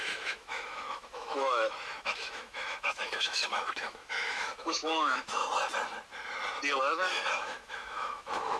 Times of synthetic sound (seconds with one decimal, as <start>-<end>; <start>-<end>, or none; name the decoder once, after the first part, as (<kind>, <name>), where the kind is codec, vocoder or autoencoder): 0.0-5.4 (autoencoder, DAC-VAE); 6.8-8.6